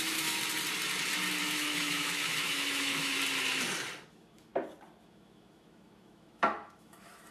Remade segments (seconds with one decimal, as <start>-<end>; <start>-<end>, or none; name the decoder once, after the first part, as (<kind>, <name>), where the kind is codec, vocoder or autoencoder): 0.0-0.4 (autoencoder, DAC-VAE); 1.4-3.2; 4.1-4.5; 5.0-7.3